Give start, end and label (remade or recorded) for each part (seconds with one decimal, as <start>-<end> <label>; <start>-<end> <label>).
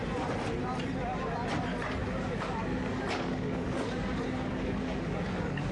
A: 0.0-2.0 recorded; 2.0-5.7 remade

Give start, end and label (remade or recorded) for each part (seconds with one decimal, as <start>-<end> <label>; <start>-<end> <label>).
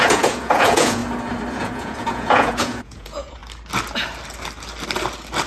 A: 0.0-1.0 remade; 1.0-1.5 recorded; 1.5-3.4 remade; 3.4-5.5 recorded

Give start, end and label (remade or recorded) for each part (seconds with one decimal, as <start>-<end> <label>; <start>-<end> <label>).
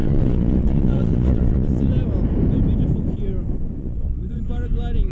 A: 0.0-1.9 remade; 1.9-3.8 recorded; 3.8-4.4 remade; 4.4-5.1 recorded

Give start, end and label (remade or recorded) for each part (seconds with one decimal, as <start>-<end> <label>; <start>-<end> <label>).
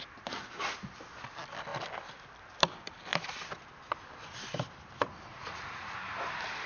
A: 0.0-5.3 recorded; 5.3-5.9 remade; 5.9-6.7 recorded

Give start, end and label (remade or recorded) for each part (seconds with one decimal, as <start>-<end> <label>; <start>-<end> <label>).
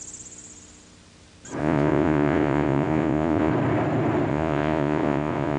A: 0.0-1.6 recorded; 1.6-3.5 remade; 3.5-4.3 recorded; 4.3-5.6 remade